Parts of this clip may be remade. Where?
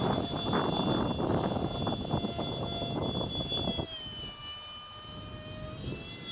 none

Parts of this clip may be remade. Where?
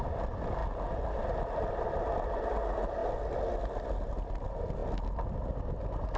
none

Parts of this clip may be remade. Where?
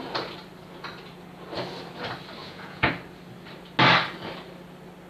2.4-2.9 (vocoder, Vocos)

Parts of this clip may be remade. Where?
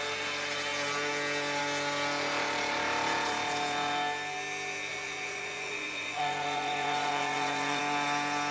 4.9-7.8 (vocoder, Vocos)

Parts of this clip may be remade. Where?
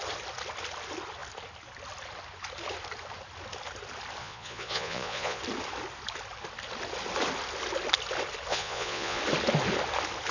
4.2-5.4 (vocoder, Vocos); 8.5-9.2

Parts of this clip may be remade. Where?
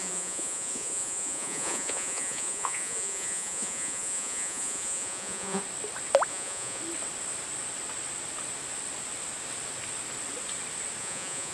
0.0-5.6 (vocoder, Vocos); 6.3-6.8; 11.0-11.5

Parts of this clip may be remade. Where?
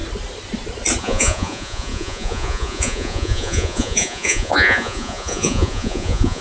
1.0-6.4 (vocoder, Vocos)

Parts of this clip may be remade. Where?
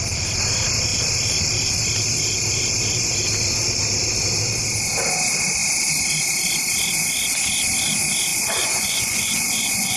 8.3-10.0 (vocoder, Vocos)